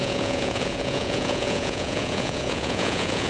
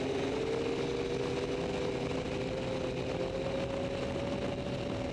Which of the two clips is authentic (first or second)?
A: second